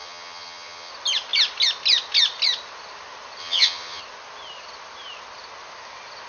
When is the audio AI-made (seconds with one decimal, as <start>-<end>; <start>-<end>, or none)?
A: 0.0-0.9; 3.4-4.0